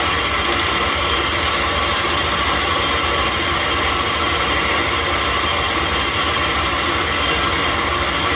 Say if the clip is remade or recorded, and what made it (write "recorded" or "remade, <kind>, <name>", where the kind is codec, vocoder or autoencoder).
recorded